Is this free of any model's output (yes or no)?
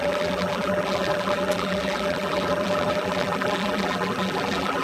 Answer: no